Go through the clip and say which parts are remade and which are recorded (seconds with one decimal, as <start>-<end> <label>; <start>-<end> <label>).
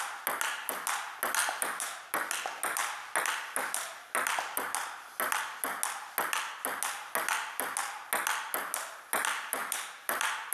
0.0-1.4 recorded; 1.4-2.0 remade; 2.0-9.6 recorded; 9.6-10.5 remade